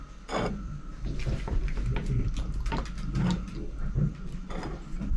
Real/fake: real